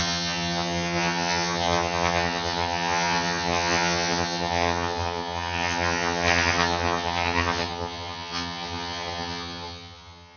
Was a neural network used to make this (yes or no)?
yes